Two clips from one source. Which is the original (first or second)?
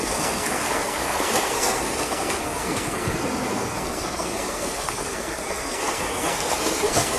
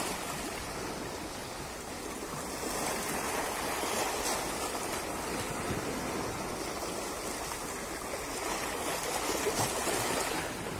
second